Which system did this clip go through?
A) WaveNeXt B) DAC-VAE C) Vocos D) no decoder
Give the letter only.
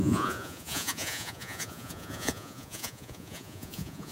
C